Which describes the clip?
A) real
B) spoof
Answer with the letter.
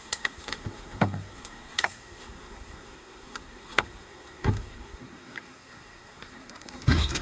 B